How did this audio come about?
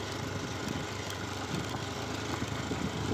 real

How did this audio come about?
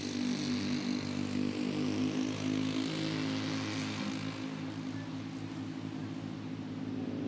real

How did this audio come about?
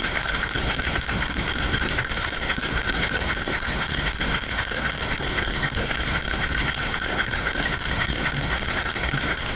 fake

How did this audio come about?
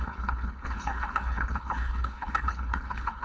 fake